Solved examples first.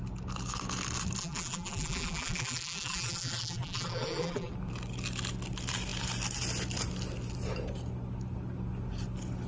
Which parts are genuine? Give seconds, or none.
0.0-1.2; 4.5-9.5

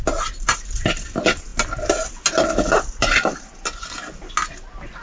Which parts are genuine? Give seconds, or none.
0.0-5.0

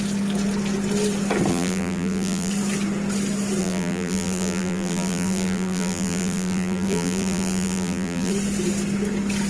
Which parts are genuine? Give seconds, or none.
0.0-1.5; 2.5-3.6; 8.3-9.5

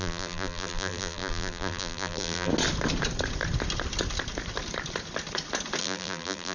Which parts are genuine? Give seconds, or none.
2.5-5.8

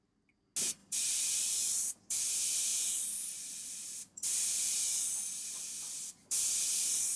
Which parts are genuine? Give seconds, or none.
0.0-0.8; 2.2-2.7; 5.6-7.2